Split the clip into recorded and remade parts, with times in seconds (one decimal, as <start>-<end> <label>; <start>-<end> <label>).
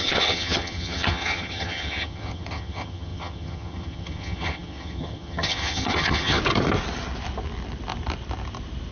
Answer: 0.0-6.4 remade; 6.4-8.9 recorded